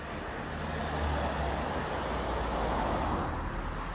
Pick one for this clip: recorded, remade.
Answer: recorded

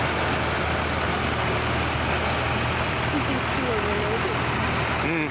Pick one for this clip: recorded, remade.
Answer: recorded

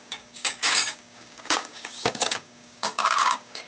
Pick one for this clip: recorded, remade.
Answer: remade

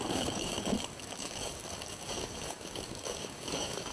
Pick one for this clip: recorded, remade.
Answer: remade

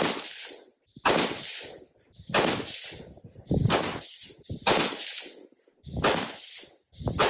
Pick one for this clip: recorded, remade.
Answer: recorded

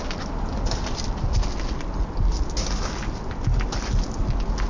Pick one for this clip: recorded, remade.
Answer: recorded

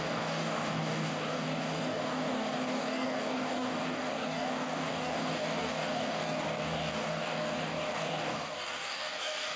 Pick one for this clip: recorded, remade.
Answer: remade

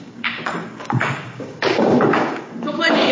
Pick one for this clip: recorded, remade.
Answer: remade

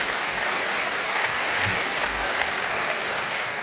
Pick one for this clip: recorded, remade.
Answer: remade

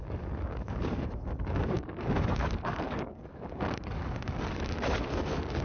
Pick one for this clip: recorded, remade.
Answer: remade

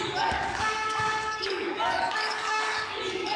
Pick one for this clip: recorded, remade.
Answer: remade